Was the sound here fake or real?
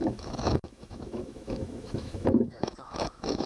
fake